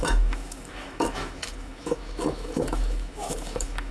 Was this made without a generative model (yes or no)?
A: no